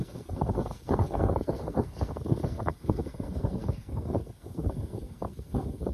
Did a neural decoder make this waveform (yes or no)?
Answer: yes